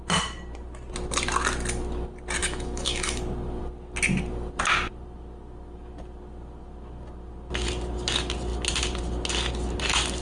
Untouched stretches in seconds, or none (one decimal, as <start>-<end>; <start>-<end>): 0.0-2.4; 3.2-10.2